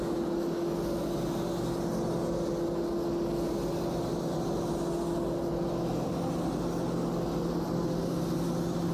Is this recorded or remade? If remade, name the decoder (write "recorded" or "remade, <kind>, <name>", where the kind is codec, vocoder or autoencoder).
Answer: recorded